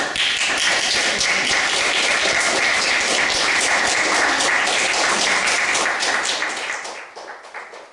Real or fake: fake